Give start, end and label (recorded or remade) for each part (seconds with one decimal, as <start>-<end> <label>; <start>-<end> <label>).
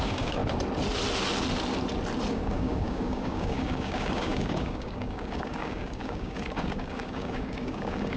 0.0-0.4 remade; 0.4-2.3 recorded; 2.3-8.2 remade